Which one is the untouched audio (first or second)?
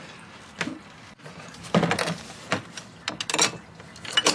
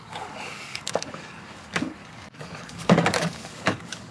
first